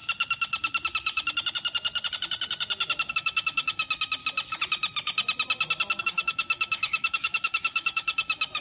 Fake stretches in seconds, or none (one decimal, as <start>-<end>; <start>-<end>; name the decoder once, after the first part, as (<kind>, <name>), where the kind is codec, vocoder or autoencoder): 3.1-4.2 (autoencoder, DAC-VAE); 6.0-8.6